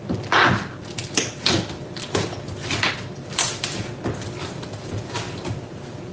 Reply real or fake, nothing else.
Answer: real